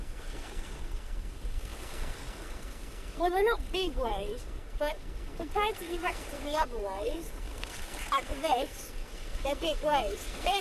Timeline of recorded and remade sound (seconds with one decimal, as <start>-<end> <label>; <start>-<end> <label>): 0.0-10.6 remade